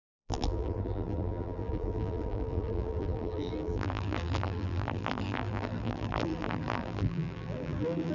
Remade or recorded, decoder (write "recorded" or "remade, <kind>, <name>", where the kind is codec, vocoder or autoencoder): remade, vocoder, BigVGAN v2